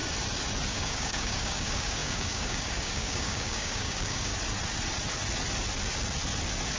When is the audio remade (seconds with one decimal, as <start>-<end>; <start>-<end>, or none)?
0.7-4.3